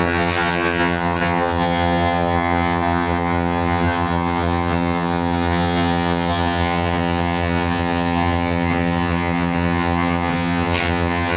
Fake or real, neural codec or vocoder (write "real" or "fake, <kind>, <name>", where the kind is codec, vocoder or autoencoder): fake, vocoder, HiFi-GAN